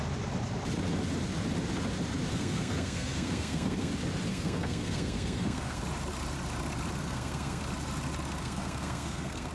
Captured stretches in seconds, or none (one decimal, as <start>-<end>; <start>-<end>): 0.0-2.3; 3.9-4.3; 5.8-7.0; 7.6-8.4